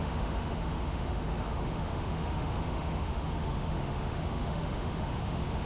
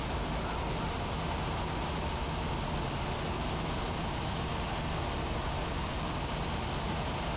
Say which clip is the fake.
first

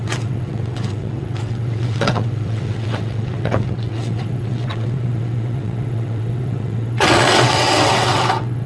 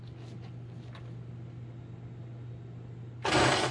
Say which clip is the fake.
first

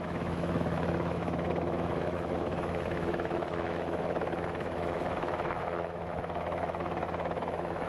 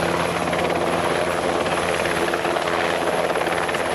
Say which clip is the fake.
first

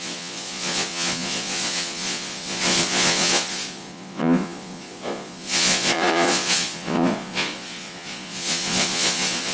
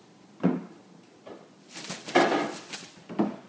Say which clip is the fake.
first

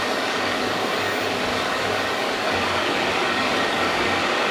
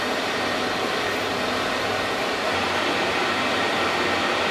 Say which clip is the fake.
first